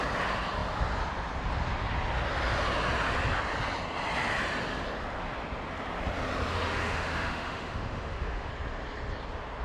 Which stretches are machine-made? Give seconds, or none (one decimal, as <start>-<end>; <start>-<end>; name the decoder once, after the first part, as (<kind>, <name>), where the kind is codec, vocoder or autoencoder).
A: 6.5-8.5 (autoencoder, DAC-VAE)